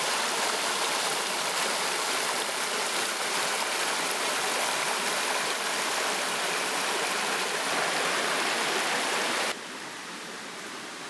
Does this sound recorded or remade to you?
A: recorded